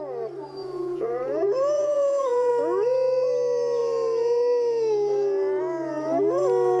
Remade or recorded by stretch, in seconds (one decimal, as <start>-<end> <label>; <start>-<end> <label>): 0.0-0.6 recorded; 0.6-2.5 remade; 2.5-6.8 recorded